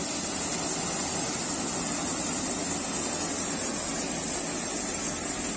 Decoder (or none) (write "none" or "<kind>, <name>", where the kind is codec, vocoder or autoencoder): none